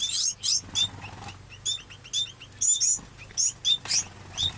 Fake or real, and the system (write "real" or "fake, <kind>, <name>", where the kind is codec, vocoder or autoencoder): real